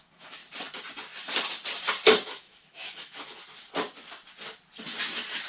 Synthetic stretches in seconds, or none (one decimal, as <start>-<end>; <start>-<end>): 0.0-0.4; 2.3-3.4